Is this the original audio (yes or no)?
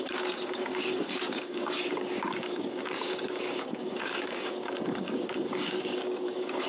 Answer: no